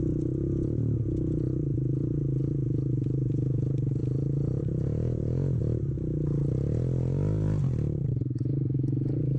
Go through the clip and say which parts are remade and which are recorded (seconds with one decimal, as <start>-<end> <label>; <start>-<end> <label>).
0.0-5.6 remade; 5.6-8.1 recorded; 8.1-9.4 remade